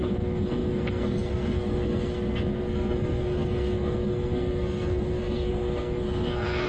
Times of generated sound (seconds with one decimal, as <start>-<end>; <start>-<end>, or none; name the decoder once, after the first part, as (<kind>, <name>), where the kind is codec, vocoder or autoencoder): 0.0-6.7 (codec, SNAC)